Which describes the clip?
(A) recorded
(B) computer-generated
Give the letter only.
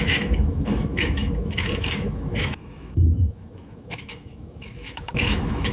B